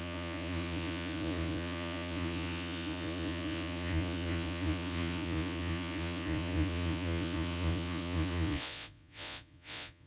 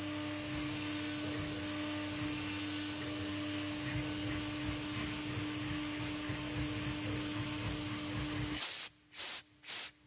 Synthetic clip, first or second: first